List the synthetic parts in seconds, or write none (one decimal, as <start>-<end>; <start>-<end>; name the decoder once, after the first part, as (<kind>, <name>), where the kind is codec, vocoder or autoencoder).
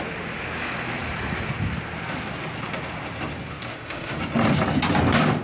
3.7-4.2 (autoencoder, DAC-VAE)